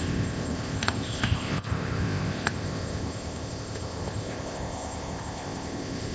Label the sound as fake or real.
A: fake